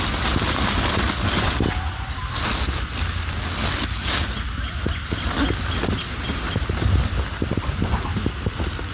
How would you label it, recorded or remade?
recorded